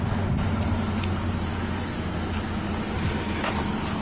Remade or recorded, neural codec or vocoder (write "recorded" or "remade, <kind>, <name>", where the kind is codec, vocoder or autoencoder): recorded